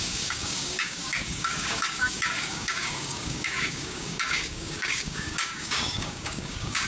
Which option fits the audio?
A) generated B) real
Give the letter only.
A